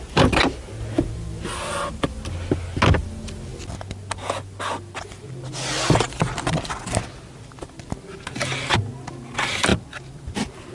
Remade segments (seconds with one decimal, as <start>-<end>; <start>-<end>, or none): 9.7-10.7